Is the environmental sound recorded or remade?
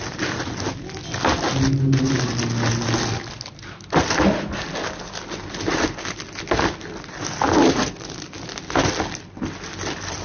recorded